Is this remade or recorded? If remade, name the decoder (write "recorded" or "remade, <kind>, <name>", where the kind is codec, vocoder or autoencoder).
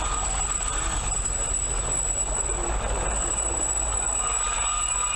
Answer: recorded